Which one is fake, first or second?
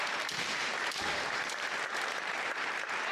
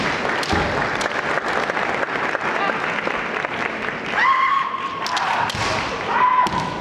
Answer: first